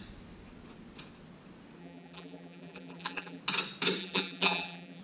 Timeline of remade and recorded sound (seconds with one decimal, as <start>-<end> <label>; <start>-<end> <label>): 0.0-1.8 recorded; 1.8-3.4 remade; 3.4-4.0 recorded; 4.0-5.0 remade